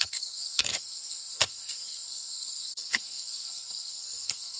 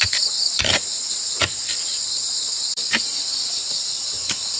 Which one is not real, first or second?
first